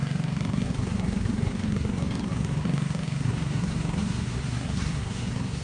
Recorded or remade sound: remade